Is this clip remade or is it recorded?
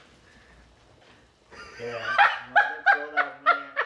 recorded